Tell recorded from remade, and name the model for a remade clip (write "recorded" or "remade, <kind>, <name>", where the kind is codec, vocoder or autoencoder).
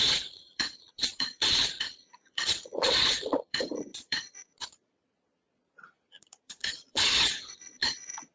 remade, vocoder, Vocos